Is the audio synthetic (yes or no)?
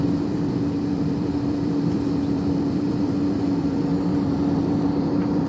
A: yes